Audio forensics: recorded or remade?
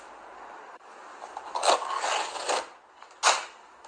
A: recorded